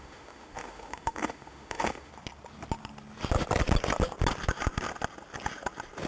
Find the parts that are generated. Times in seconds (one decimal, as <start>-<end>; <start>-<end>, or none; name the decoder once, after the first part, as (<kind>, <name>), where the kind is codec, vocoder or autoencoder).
0.0-2.1 (autoencoder, DAC-VAE)